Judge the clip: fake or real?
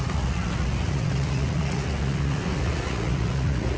fake